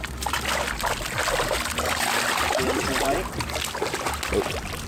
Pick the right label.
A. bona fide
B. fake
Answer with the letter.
A